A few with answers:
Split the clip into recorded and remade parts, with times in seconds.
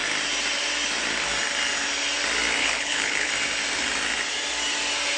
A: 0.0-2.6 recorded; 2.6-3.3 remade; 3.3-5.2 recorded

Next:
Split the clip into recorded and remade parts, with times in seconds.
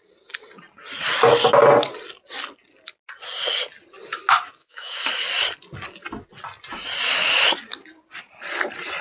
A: 0.0-4.6 recorded; 4.6-5.1 remade; 5.1-9.0 recorded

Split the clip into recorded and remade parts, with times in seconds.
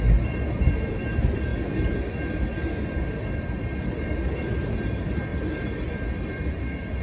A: 0.0-5.3 recorded; 5.3-6.3 remade; 6.3-7.0 recorded